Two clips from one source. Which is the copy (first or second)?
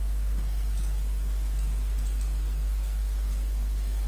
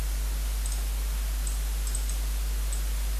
first